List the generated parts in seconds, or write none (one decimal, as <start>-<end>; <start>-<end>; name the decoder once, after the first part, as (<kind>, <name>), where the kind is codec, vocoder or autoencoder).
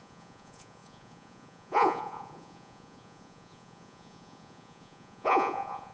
0.0-5.9 (vocoder, Vocos)